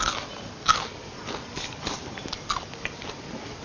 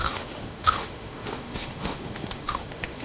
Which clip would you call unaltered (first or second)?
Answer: first